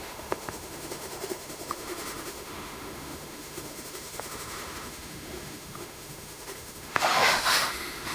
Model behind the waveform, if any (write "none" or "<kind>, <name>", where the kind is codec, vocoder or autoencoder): autoencoder, DAC-VAE